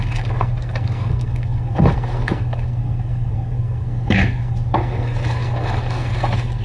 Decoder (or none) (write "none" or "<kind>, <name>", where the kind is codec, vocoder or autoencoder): codec, SNAC